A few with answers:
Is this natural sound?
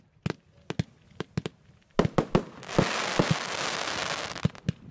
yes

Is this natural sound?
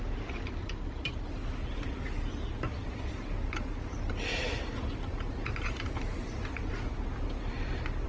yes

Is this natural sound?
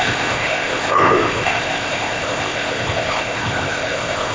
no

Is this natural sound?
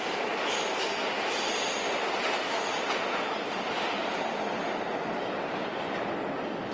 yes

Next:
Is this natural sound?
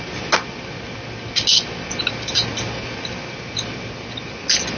yes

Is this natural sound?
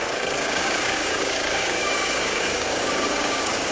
no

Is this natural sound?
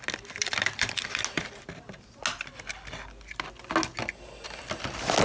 yes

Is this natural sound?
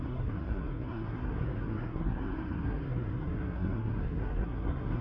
no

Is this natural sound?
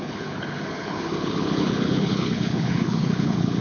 no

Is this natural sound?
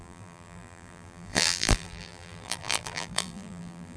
no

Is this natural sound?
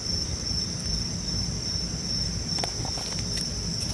yes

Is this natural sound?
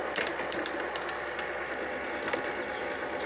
yes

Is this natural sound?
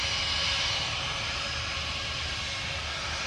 no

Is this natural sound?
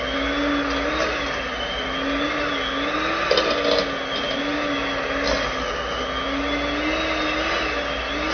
yes